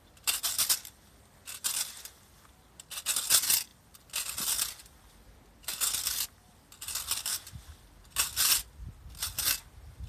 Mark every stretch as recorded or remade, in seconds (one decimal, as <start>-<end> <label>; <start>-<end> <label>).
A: 0.0-10.1 recorded